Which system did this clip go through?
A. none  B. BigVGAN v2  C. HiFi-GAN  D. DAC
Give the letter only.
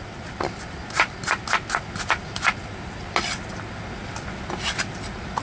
A